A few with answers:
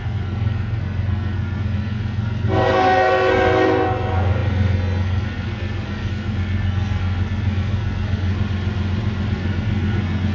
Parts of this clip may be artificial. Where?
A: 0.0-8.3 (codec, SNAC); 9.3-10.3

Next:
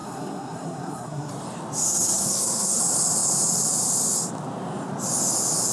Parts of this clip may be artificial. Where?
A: 0.0-1.3 (codec, SNAC); 1.8-2.8

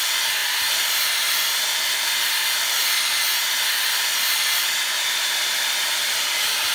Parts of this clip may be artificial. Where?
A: none

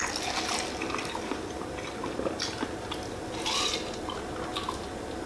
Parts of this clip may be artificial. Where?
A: none

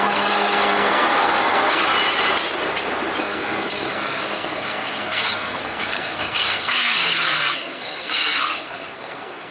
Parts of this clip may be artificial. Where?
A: 0.0-1.8 (codec, SNAC); 3.2-9.5

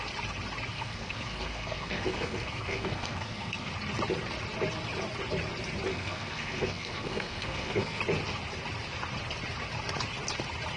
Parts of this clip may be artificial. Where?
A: 0.7-3.7 (codec, SNAC); 5.9-8.0

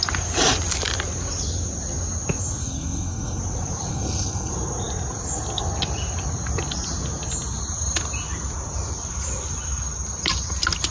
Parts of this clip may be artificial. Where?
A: 2.6-3.4 (codec, SNAC); 3.9-4.5